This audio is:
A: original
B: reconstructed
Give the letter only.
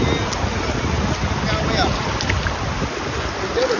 A